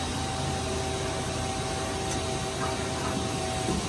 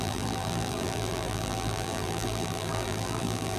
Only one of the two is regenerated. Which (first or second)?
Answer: second